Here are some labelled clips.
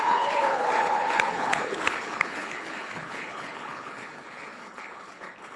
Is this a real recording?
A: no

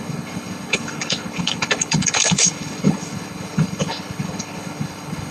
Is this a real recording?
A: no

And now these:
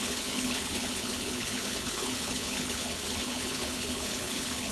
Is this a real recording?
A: no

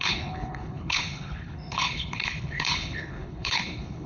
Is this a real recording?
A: no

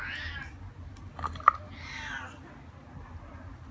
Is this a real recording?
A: yes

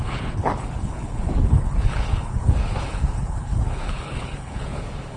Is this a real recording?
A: no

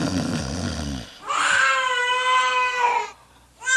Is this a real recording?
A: yes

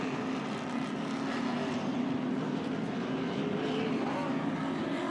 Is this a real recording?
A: yes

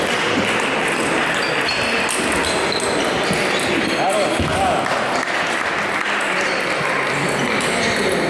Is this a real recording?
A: yes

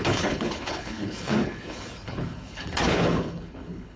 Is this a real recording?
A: no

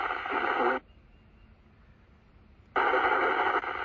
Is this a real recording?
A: yes